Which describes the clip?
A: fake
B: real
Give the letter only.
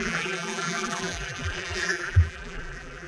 A